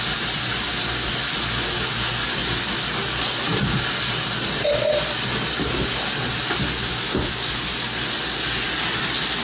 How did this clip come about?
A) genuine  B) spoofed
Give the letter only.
A